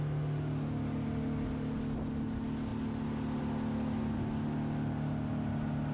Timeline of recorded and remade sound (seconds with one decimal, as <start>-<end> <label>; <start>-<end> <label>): 0.0-5.9 recorded